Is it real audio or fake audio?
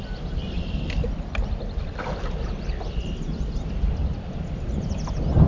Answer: real